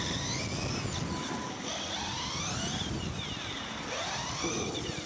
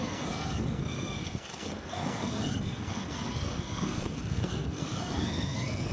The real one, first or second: first